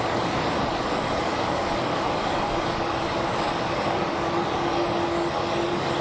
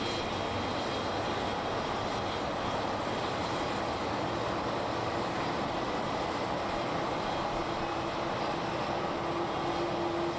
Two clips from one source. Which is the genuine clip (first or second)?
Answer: second